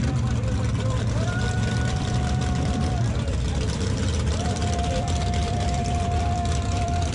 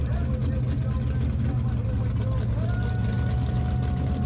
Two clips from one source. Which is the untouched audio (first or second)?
second